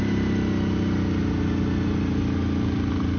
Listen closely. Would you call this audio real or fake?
real